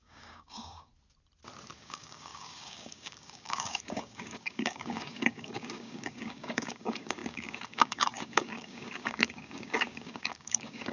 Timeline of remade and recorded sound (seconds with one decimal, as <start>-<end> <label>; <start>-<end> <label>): 0.0-0.9 remade; 0.9-1.8 recorded; 1.8-10.9 remade